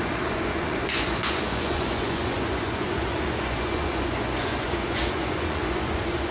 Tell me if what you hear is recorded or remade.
remade